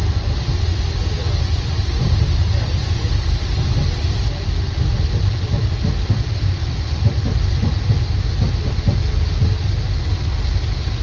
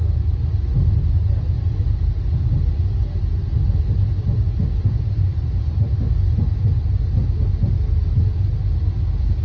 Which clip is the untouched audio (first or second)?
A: second